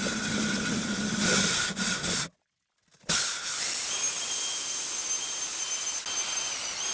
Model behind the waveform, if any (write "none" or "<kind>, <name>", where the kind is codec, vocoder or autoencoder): none